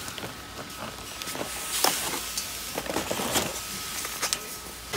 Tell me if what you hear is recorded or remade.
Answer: recorded